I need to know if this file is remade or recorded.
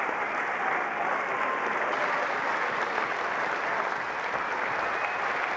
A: recorded